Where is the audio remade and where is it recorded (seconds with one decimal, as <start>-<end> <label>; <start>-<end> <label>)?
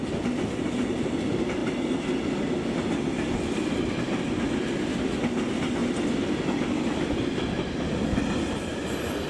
0.0-9.3 recorded